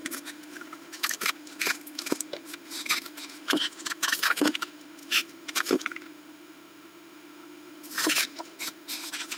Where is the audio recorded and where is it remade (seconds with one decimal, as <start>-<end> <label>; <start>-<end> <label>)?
0.0-9.4 remade